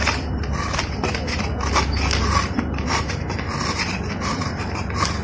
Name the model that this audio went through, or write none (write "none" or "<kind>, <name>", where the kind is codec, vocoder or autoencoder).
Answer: none